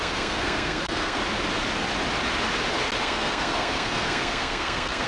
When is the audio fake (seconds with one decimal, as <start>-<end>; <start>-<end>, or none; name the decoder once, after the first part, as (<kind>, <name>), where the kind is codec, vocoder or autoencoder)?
0.0-1.2 (codec, SNAC); 3.0-5.1